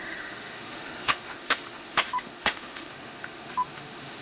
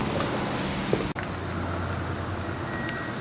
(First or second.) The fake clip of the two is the first